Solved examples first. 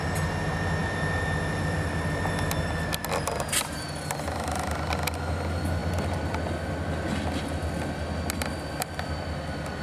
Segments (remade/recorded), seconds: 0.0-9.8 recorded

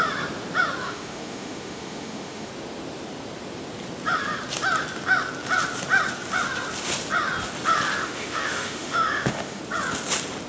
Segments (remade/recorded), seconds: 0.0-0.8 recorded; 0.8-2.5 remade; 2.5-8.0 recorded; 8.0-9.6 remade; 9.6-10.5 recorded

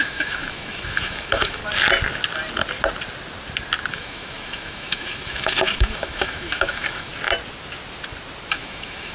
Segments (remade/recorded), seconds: 0.0-1.6 remade; 1.6-3.9 recorded; 3.9-7.1 remade; 7.1-8.5 recorded; 8.5-9.1 remade